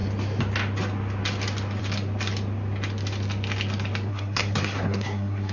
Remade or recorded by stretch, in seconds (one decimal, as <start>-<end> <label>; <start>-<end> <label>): 0.0-4.1 recorded; 4.1-5.5 remade